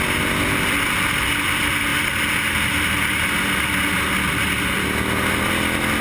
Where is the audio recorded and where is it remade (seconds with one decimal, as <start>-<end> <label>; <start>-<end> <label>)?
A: 0.0-6.0 recorded